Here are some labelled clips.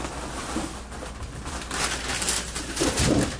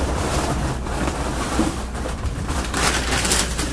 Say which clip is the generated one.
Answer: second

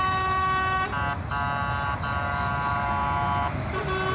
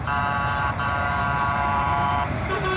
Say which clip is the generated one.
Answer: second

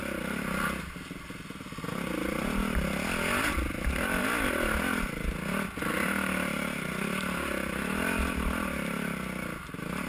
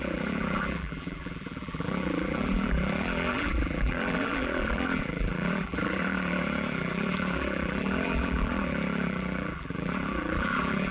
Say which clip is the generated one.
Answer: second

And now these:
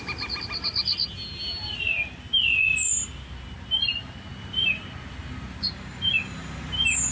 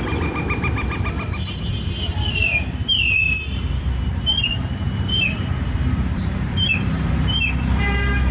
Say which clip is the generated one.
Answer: second